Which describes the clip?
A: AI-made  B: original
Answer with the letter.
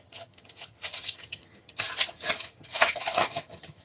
A